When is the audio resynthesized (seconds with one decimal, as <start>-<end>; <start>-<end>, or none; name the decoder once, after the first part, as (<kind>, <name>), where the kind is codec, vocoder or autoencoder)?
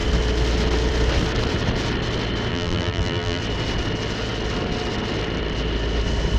2.5-3.4 (vocoder, BigVGAN v2)